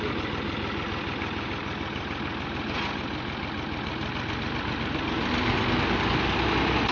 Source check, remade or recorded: recorded